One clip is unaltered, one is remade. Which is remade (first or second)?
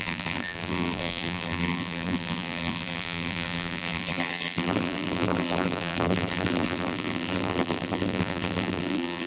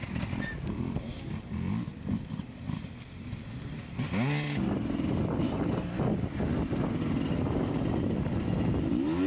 first